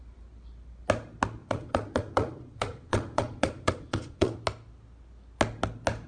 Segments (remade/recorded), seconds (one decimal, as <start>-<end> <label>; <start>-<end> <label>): 0.0-1.4 recorded; 1.4-4.4 remade; 4.4-6.1 recorded